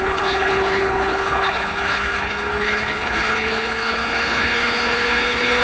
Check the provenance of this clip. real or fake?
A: fake